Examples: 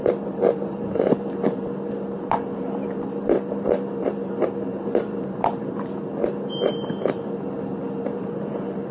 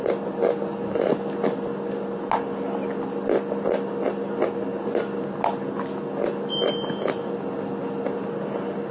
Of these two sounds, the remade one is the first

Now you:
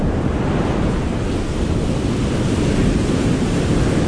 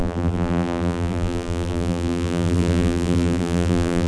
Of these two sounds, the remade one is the second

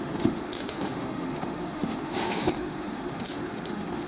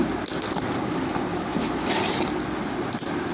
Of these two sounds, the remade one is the first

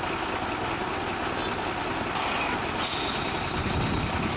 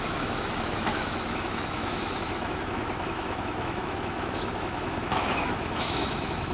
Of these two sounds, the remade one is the second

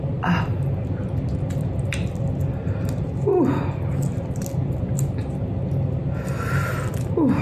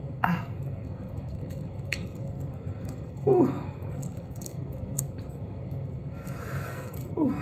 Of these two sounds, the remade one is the second